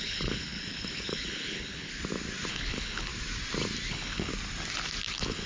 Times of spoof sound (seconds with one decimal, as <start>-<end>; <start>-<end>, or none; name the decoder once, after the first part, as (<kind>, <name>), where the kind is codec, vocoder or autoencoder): 0.0-1.9 (codec, HILCodec); 2.5-3.1; 3.9-4.3; 5.1-5.5